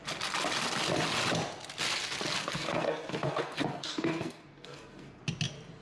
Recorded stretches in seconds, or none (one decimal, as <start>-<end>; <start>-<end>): 0.0-2.4; 5.2-5.8